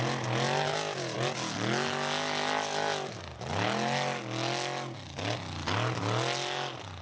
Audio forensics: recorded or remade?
recorded